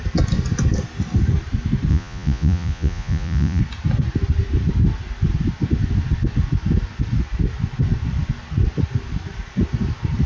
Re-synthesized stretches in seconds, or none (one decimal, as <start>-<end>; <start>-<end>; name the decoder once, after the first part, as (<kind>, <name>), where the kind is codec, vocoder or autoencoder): 1.9-3.6 (vocoder, Vocos)